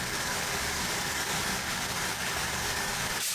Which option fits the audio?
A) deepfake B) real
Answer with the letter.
A